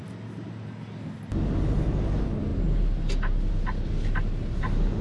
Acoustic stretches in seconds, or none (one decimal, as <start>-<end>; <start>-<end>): 0.0-5.0